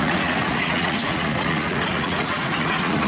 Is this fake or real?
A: fake